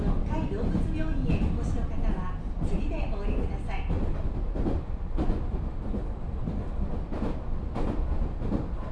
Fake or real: real